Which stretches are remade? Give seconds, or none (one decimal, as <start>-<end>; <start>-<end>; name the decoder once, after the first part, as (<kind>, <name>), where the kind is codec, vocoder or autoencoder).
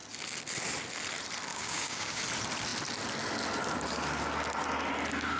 1.5-2.2 (codec, DAC)